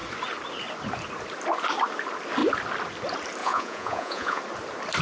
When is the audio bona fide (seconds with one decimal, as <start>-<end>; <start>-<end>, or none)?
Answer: 0.0-3.4; 4.4-5.0